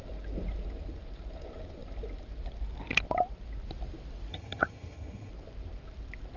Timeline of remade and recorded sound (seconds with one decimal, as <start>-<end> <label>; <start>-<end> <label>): 0.0-4.3 recorded; 4.3-5.3 remade; 5.3-6.4 recorded